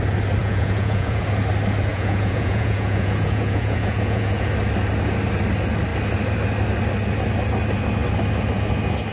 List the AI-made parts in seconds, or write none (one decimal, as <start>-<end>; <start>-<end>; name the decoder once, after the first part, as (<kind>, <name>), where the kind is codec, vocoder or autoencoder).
0.4-1.2 (vocoder, Vocos); 1.9-4.5